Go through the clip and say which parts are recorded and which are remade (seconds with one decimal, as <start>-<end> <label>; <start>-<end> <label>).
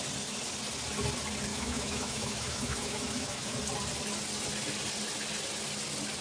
0.0-1.5 recorded; 1.5-3.6 remade; 3.6-6.2 recorded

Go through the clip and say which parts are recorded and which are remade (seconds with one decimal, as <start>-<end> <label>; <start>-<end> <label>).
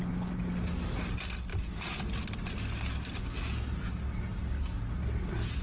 0.0-5.6 recorded